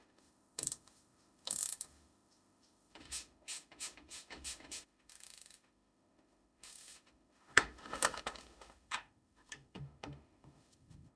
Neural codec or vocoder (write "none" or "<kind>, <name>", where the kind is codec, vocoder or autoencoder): autoencoder, DAC-VAE